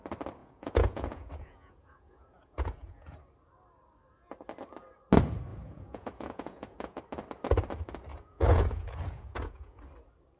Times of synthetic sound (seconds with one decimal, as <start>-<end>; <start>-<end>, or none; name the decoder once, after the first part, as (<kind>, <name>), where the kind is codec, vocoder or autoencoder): 0.4-3.2 (vocoder, Vocos); 5.5-7.0; 8.1-9.8